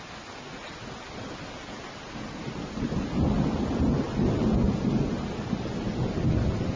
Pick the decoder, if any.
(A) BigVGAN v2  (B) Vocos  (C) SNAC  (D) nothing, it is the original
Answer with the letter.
D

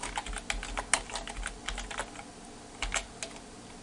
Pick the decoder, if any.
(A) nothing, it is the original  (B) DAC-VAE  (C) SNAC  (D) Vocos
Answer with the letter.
A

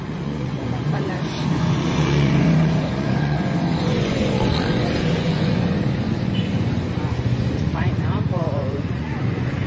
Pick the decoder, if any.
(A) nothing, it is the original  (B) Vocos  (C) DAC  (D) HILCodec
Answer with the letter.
B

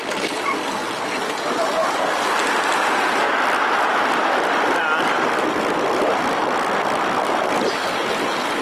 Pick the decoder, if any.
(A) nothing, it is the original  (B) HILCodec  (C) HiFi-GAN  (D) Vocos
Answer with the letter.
A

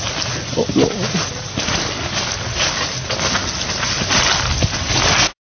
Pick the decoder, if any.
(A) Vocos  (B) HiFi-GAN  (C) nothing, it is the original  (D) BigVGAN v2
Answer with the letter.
C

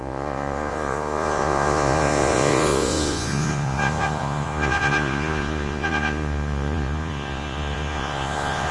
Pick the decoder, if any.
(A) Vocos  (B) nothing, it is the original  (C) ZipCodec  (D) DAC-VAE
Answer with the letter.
A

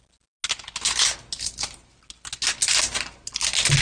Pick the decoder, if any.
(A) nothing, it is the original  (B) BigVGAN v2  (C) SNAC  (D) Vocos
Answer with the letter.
A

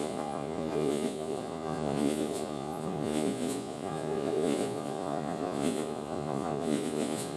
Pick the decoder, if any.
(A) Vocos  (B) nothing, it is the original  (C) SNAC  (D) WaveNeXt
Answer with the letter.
A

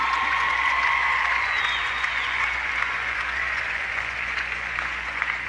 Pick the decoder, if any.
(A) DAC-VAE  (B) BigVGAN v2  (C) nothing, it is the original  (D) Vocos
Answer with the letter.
D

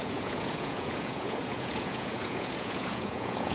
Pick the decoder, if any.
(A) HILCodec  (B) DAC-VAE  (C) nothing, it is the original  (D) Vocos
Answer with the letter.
D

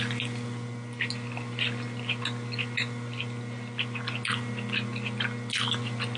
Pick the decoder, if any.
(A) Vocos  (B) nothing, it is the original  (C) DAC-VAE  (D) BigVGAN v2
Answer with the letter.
B